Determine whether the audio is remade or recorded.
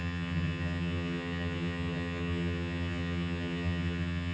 remade